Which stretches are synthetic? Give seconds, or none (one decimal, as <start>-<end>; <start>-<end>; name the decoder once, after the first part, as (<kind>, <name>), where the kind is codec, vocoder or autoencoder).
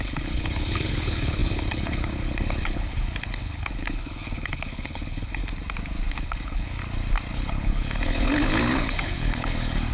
0.0-5.4 (codec, HILCodec); 6.1-6.8; 7.3-9.9